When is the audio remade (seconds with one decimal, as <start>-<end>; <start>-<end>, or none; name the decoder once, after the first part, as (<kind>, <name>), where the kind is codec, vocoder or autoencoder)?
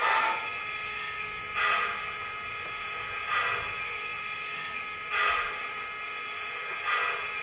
none